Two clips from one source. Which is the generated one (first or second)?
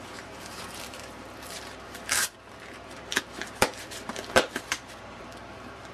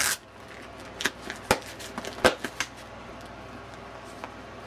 first